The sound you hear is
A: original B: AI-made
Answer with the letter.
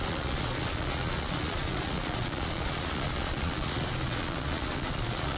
B